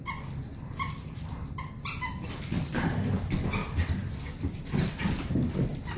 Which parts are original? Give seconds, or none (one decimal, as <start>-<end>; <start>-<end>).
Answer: 0.0-6.0